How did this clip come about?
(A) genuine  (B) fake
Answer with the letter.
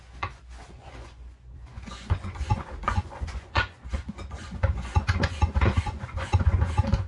B